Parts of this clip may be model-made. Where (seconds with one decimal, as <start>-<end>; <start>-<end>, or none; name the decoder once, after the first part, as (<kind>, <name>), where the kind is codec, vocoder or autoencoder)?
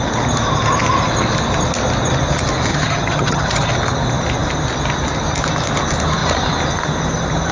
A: 2.7-3.7 (vocoder, HiFi-GAN)